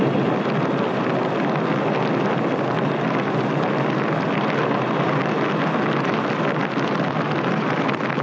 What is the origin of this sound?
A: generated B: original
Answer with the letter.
B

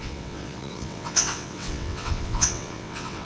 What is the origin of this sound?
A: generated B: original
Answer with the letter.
A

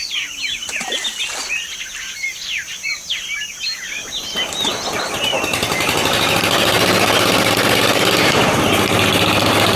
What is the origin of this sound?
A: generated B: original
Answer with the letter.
B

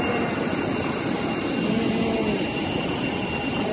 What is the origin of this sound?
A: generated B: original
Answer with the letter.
B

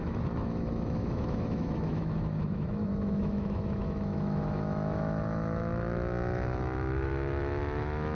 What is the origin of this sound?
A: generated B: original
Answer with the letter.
A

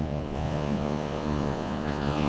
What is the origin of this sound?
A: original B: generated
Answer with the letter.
B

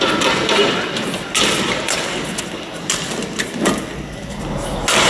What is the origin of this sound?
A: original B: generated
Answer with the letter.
A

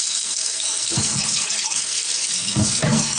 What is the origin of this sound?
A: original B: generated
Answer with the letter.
B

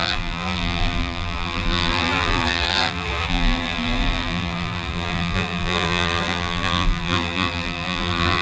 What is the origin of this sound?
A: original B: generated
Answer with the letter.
B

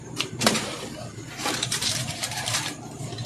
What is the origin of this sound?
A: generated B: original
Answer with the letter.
A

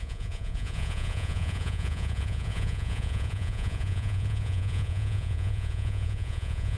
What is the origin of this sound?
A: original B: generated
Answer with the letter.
B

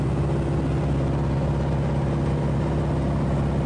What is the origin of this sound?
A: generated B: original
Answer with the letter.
B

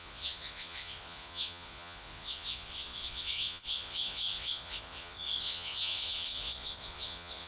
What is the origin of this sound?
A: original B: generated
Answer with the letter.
B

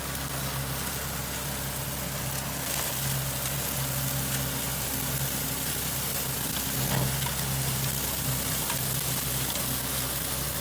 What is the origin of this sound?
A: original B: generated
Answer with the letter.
A